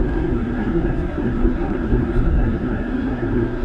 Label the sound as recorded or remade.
remade